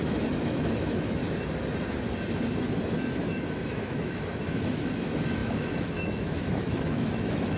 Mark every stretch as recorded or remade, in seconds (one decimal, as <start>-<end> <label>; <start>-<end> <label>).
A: 0.0-1.2 remade; 1.2-3.7 recorded; 3.7-7.6 remade